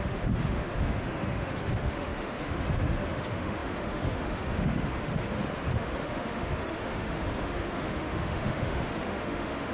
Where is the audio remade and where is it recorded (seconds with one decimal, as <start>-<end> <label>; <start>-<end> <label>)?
0.0-9.7 remade

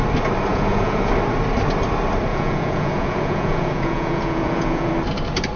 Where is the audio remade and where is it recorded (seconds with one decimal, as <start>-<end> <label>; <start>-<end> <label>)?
0.0-0.5 recorded; 0.5-1.1 remade; 1.1-2.3 recorded; 2.3-4.9 remade; 4.9-5.6 recorded

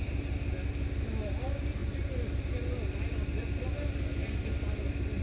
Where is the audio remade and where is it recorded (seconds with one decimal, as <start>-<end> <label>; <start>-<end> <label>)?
0.0-5.2 recorded

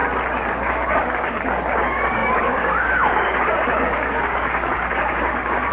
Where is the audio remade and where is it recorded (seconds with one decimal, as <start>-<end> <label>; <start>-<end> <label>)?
0.0-0.5 recorded; 0.5-5.7 remade

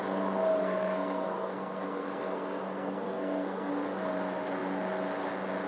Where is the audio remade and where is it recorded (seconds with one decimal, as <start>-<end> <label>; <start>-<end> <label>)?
0.0-0.6 recorded; 0.6-3.7 remade; 3.7-5.7 recorded

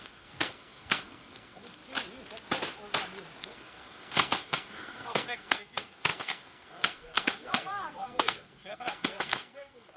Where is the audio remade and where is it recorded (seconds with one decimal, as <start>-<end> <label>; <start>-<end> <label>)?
0.0-1.8 remade; 1.8-3.4 recorded; 3.4-10.0 remade

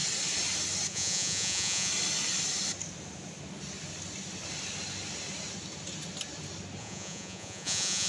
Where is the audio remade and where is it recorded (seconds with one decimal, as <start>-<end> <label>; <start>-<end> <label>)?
0.0-0.9 recorded; 0.9-1.9 remade; 1.9-6.8 recorded; 6.8-8.1 remade